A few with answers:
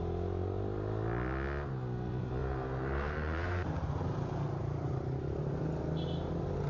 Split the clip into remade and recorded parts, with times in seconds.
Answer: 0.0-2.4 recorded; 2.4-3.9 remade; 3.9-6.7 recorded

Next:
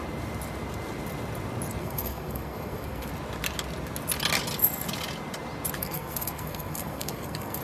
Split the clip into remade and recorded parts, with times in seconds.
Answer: 0.0-1.8 recorded; 1.8-3.1 remade; 3.1-5.8 recorded; 5.8-7.6 remade

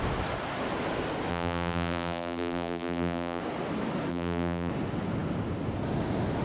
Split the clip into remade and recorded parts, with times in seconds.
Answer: 0.0-1.3 recorded; 1.3-3.4 remade; 3.4-4.1 recorded; 4.1-4.7 remade; 4.7-6.4 recorded

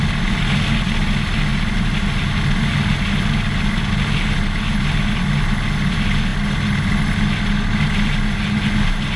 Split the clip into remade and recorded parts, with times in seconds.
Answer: 0.0-9.2 recorded

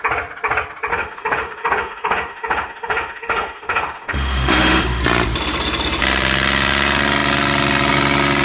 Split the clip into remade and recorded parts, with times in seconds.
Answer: 0.0-0.9 recorded; 0.9-5.0 remade; 5.0-8.4 recorded

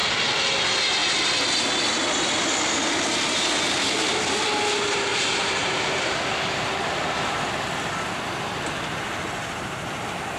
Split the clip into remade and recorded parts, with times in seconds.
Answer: 0.0-5.1 recorded; 5.1-7.3 remade; 7.3-10.4 recorded